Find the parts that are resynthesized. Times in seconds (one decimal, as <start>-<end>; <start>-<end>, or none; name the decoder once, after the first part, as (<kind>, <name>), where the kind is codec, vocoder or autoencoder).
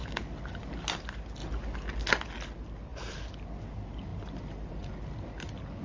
none